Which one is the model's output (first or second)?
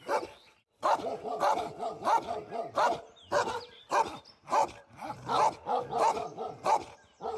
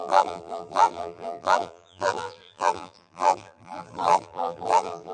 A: second